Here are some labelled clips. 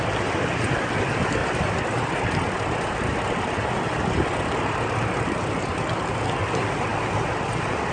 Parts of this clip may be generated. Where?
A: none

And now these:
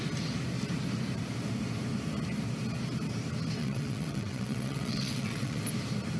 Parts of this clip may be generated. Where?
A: 3.6-5.6 (vocoder, WaveNeXt)

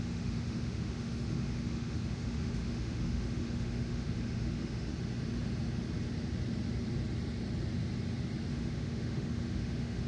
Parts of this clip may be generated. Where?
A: 0.0-4.9 (autoencoder, DAC-VAE); 8.5-10.1

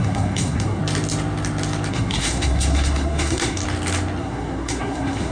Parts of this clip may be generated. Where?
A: 0.0-0.8 (codec, SNAC); 1.9-3.6; 4.2-5.3

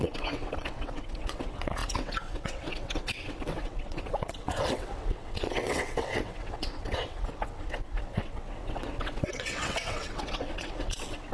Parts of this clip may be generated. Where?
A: 0.0-11.3 (vocoder, WaveNeXt)

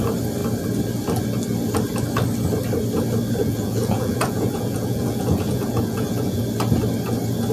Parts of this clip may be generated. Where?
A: 3.4-6.4 (vocoder, Vocos)